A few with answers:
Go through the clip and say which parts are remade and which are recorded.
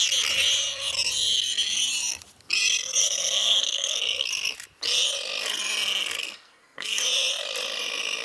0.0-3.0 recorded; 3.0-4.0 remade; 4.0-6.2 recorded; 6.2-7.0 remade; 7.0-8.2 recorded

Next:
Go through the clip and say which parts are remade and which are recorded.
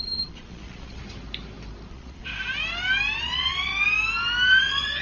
0.0-1.0 remade; 1.0-1.9 recorded; 1.9-2.3 remade; 2.3-3.2 recorded; 3.2-3.7 remade; 3.7-4.6 recorded; 4.6-5.0 remade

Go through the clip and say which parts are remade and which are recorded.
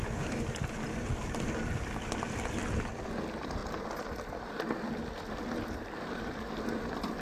0.0-7.2 recorded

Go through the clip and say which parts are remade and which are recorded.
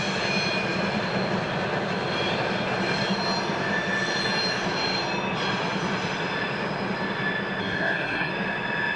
0.0-7.6 recorded; 7.6-8.3 remade; 8.3-9.0 recorded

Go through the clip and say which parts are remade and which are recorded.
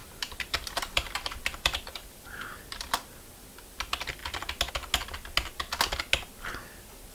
0.0-2.6 remade; 2.6-7.1 recorded